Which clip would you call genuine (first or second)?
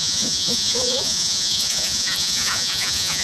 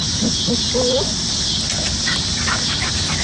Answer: second